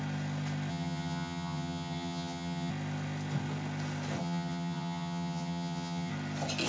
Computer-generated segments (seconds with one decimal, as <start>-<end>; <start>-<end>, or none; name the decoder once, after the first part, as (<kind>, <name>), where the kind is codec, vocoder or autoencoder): 0.7-2.7 (vocoder, HiFi-GAN); 4.2-6.1